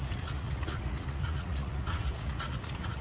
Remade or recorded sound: remade